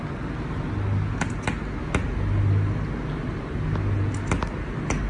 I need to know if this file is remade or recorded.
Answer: recorded